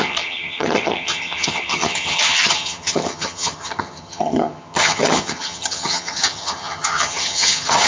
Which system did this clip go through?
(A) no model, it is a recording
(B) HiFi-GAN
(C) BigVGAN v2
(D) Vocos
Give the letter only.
B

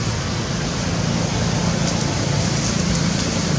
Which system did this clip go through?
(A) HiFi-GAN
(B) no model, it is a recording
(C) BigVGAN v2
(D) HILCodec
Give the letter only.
B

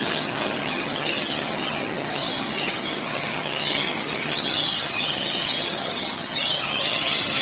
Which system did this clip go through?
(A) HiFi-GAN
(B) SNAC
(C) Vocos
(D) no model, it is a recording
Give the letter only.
A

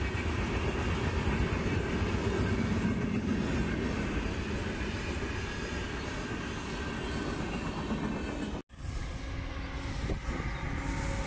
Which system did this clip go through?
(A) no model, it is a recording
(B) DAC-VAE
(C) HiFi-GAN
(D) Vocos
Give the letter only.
A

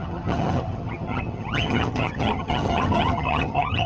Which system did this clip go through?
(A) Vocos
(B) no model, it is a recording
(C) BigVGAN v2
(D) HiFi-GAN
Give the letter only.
D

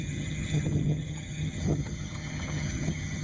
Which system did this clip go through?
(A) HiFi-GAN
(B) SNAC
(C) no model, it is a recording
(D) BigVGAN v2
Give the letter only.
A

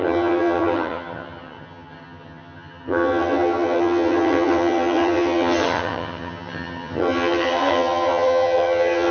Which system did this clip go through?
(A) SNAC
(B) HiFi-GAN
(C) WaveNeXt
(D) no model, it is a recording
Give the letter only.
B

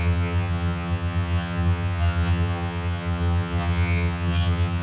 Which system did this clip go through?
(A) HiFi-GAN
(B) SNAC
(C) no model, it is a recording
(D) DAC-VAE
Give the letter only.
A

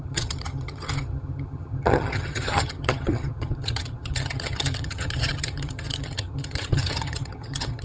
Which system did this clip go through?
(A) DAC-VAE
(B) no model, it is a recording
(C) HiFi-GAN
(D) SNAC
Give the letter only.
C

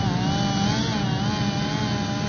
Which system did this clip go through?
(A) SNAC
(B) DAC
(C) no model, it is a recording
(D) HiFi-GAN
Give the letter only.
C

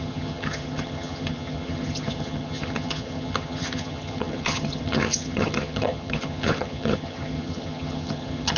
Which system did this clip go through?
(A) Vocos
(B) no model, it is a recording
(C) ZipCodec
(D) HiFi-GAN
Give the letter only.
D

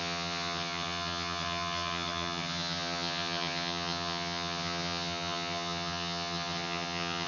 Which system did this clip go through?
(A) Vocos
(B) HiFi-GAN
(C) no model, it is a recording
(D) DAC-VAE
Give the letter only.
B